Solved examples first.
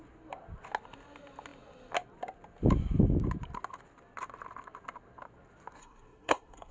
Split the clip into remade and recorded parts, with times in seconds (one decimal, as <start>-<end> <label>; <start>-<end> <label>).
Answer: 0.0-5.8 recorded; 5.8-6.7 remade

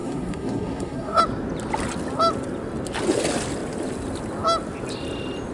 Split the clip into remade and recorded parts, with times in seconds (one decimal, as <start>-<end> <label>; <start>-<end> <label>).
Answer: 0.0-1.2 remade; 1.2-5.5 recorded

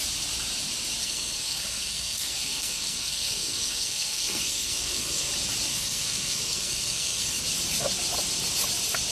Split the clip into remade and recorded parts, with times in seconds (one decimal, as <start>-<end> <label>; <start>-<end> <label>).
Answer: 0.0-1.0 recorded; 1.0-5.3 remade; 5.3-5.7 recorded; 5.7-7.4 remade; 7.4-9.1 recorded